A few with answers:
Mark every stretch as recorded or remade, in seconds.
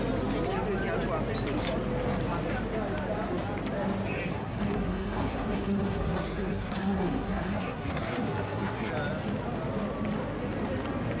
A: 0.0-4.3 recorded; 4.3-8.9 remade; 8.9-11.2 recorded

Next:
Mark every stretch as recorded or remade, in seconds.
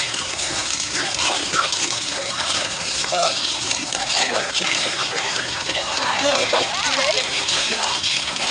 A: 0.0-6.7 remade; 6.7-7.2 recorded; 7.2-8.5 remade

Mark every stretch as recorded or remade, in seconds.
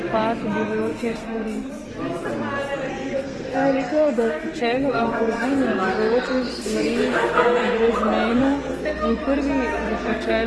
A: 0.0-0.9 recorded; 0.9-1.7 remade; 1.7-2.9 recorded; 2.9-7.9 remade; 7.9-8.3 recorded; 8.3-9.2 remade; 9.2-10.0 recorded; 10.0-10.5 remade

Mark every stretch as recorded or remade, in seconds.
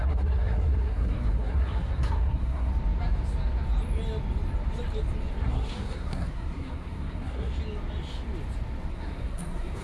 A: 0.0-2.7 remade; 2.7-5.4 recorded; 5.4-7.5 remade; 7.5-8.9 recorded; 8.9-9.8 remade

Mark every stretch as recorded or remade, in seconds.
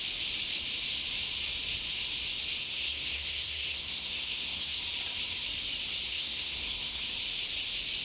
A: 0.0-2.6 recorded; 2.6-4.8 remade; 4.8-6.1 recorded; 6.1-7.0 remade; 7.0-8.0 recorded